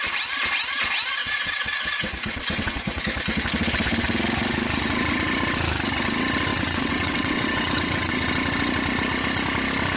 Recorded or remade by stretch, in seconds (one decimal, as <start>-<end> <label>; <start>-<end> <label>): 0.0-1.2 recorded; 1.2-3.0 remade; 3.0-6.5 recorded; 6.5-8.1 remade; 8.1-10.0 recorded